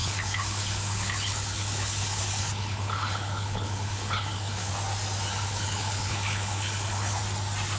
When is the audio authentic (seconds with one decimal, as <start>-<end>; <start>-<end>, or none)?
4.7-5.3; 7.2-7.8